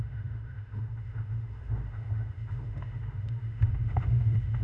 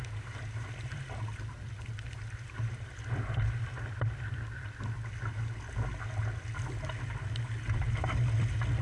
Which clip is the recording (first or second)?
second